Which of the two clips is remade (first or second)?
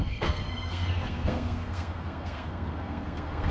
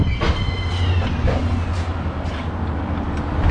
first